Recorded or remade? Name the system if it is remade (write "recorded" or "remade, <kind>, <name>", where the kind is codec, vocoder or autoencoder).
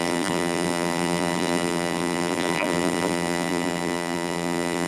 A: remade, vocoder, BigVGAN v2